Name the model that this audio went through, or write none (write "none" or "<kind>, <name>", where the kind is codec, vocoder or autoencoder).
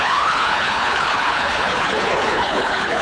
codec, HILCodec